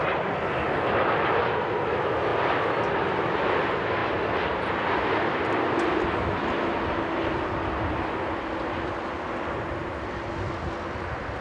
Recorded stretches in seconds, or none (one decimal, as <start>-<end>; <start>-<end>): 0.0-11.4